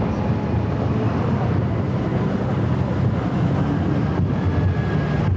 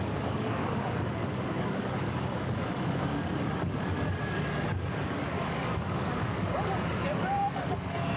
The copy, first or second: second